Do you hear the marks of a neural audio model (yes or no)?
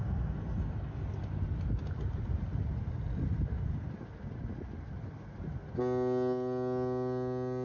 no